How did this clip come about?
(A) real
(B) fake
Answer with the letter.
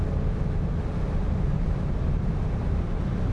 A